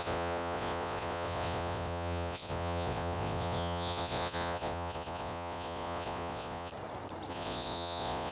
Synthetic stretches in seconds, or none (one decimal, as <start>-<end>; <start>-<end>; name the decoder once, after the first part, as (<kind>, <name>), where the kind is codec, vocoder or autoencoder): 0.0-6.7 (vocoder, Vocos); 7.3-8.3